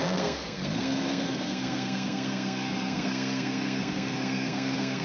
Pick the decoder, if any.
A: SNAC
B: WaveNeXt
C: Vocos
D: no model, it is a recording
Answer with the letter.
A